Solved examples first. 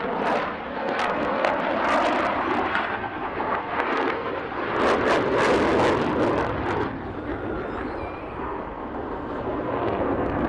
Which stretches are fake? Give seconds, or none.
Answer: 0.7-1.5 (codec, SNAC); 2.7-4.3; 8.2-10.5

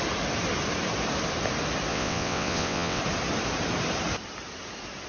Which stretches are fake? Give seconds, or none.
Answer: 1.9-3.0 (vocoder, WaveNeXt)